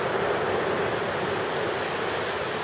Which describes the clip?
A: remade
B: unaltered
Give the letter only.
B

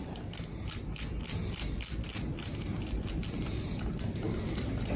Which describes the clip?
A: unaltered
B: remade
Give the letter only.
A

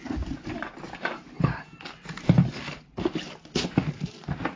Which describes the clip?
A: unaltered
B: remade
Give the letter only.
A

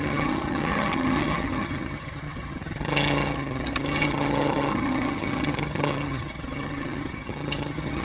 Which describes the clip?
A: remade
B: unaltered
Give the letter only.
A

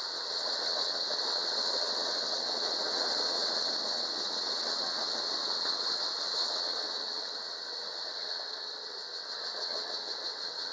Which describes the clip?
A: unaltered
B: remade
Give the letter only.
B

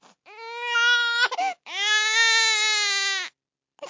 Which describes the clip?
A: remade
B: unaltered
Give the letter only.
B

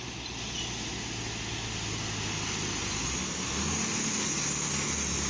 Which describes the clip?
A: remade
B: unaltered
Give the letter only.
B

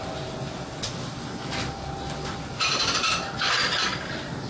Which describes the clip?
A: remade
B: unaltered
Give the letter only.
B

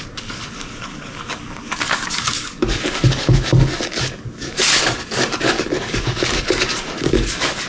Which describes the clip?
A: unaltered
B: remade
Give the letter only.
B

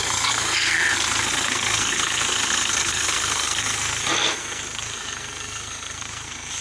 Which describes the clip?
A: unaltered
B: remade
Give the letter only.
B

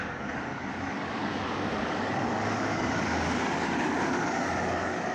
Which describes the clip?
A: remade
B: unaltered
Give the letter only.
A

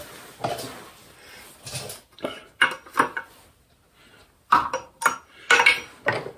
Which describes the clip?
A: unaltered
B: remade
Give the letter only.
A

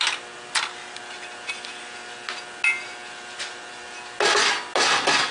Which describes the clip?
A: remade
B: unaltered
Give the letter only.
B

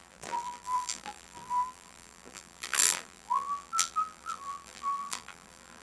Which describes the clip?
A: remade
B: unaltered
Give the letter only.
A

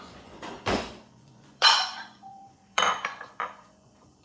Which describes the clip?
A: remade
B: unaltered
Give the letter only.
A